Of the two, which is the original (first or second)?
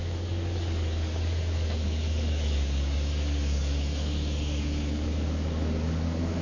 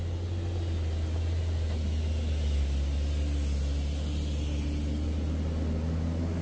second